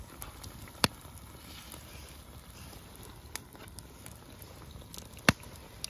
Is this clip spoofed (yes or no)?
no